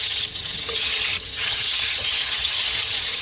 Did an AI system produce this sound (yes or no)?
yes